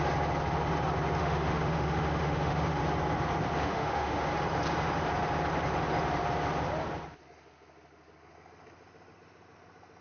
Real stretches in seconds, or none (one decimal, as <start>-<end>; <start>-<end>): 0.0-1.2; 2.8-3.6; 4.3-10.0